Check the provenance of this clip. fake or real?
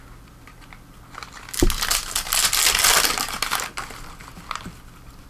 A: real